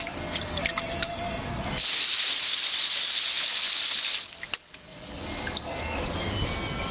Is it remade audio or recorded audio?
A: recorded